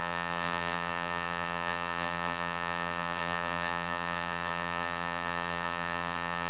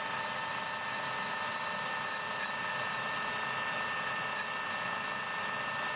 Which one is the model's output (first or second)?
first